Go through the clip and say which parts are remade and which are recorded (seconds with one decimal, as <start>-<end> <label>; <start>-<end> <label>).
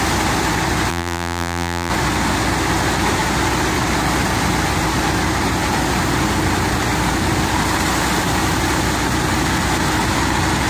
0.0-0.9 recorded; 0.9-1.9 remade; 1.9-10.7 recorded